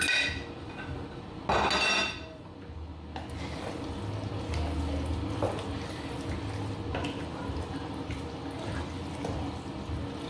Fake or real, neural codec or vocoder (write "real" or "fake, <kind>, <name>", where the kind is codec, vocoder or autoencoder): real